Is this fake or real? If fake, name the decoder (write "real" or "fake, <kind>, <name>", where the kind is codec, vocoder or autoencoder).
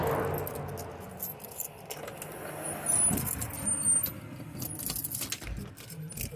real